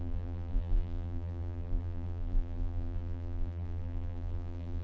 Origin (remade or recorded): remade